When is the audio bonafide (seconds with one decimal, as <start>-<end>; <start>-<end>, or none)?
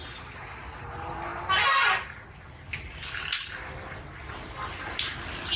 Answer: 0.0-5.6